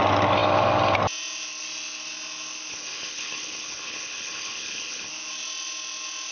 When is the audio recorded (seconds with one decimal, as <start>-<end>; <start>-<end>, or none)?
0.0-2.7; 5.1-6.3